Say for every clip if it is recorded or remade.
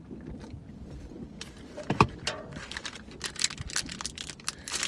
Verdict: remade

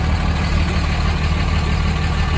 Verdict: recorded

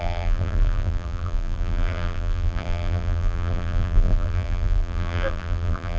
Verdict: remade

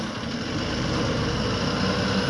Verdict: recorded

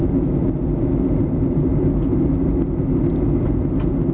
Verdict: recorded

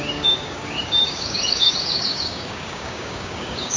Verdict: remade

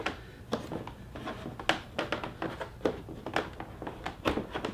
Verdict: recorded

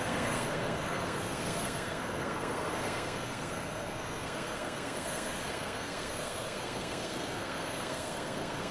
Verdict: remade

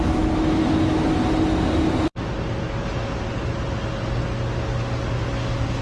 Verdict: recorded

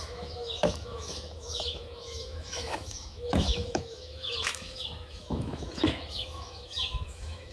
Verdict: remade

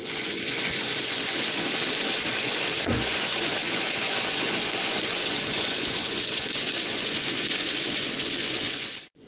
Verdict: remade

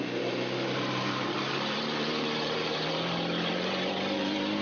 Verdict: remade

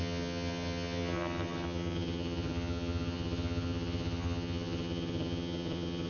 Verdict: remade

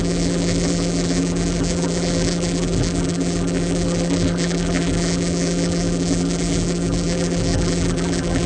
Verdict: remade